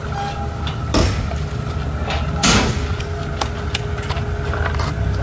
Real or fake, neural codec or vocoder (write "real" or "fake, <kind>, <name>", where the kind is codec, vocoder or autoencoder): real